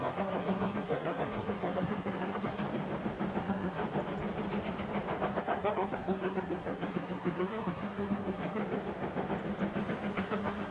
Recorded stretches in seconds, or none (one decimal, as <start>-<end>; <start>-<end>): 2.6-3.4; 3.8-5.4; 8.6-10.1